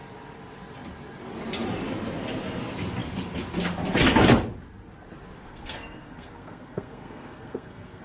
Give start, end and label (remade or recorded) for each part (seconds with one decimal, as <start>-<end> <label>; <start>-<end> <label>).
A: 0.0-5.4 recorded; 5.4-8.0 remade